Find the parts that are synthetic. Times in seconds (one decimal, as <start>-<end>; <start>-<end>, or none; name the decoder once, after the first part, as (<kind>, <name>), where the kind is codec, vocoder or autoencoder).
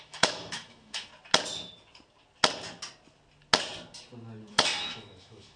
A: 0.0-1.1 (autoencoder, DAC-VAE); 4.5-5.6